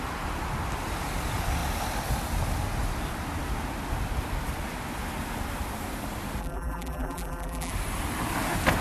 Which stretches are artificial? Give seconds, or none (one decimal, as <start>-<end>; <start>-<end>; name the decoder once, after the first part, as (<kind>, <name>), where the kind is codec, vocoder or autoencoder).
6.4-7.7 (vocoder, BigVGAN v2)